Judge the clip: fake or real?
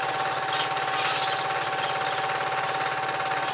real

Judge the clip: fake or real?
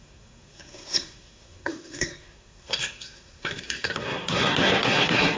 fake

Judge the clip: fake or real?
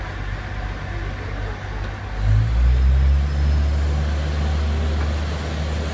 real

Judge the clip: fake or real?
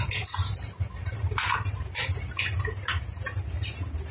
real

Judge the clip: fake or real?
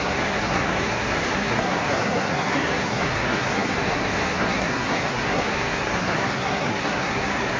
fake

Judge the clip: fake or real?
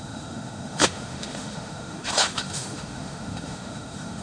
fake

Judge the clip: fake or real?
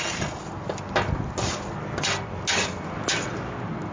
real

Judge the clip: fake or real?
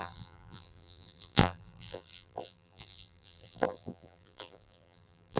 fake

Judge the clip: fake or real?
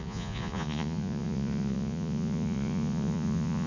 fake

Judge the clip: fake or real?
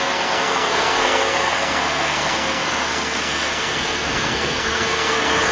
fake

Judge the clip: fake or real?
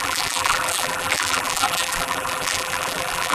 fake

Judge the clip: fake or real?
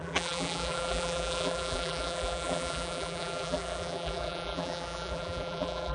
fake